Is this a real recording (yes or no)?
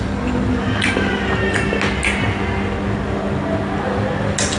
yes